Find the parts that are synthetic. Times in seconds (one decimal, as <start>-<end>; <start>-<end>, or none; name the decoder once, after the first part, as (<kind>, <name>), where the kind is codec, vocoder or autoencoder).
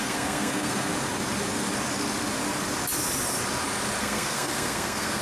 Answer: 0.0-0.9 (codec, SNAC); 4.0-5.2